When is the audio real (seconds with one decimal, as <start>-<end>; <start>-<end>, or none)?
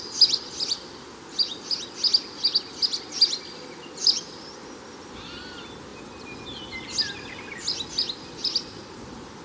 0.0-9.4